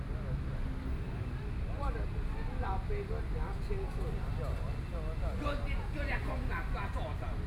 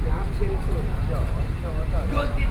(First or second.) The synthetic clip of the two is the second